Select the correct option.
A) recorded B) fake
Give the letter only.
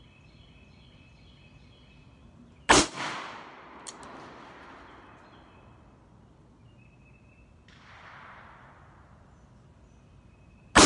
A